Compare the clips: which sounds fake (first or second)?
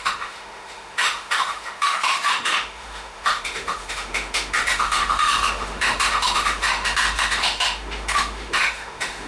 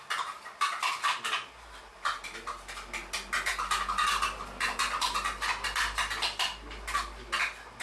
first